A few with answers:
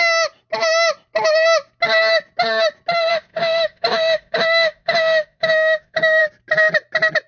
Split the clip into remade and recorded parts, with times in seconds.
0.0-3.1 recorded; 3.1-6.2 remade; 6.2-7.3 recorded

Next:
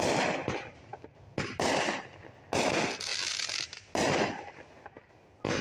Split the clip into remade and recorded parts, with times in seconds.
0.0-5.6 recorded